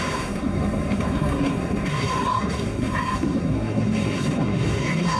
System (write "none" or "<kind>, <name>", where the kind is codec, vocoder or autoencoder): codec, SNAC